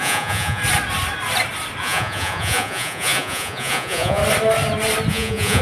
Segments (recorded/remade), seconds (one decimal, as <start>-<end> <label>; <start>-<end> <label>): 0.0-0.6 remade; 0.6-1.8 recorded; 1.8-4.2 remade; 4.2-5.1 recorded; 5.1-5.6 remade